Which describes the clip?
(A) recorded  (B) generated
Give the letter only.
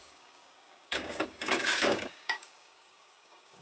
B